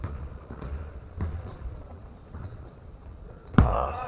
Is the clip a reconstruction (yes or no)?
yes